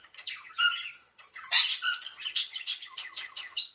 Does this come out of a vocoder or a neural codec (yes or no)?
yes